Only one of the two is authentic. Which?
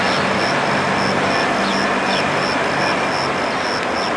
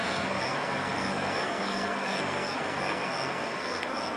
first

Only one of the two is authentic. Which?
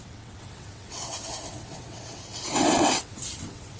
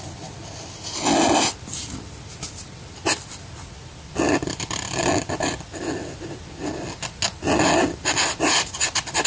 second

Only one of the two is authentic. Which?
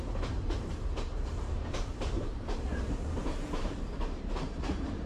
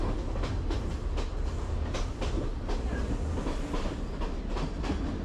second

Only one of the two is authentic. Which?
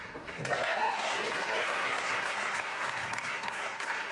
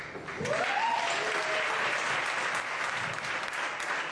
second